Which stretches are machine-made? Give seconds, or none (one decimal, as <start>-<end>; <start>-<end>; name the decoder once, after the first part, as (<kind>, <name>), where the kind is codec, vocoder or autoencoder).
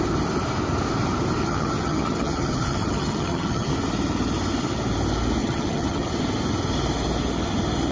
1.4-3.7 (vocoder, HiFi-GAN); 5.4-6.1